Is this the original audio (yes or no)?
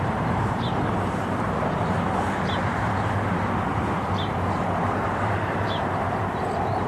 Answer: no